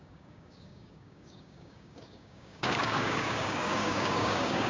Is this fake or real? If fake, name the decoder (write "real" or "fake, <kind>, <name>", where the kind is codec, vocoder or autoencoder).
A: fake, codec, DAC